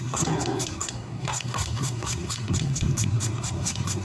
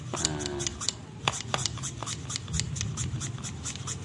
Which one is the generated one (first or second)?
first